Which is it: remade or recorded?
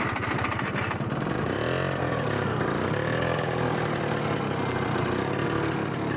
recorded